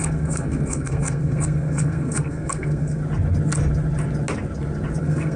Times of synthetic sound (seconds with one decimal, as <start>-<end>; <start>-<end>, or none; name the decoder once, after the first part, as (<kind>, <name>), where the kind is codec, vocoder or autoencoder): 0.0-3.0 (codec, SNAC); 5.0-5.4